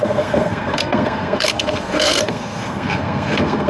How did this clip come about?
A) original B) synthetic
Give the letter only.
B